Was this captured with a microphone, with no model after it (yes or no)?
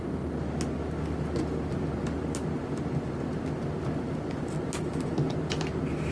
yes